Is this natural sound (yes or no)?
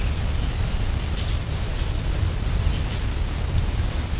yes